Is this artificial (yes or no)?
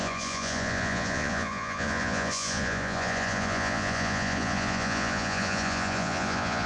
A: yes